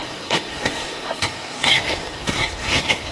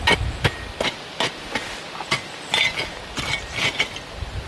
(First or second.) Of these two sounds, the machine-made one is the first